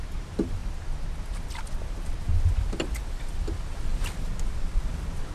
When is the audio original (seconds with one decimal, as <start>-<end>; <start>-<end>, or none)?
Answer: 0.0-2.3; 3.3-5.3